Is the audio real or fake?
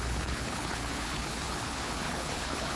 fake